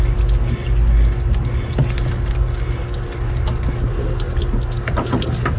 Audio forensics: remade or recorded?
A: recorded